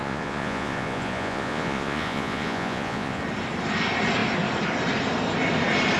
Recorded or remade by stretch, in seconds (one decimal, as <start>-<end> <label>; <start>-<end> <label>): 0.0-3.2 remade; 3.2-6.0 recorded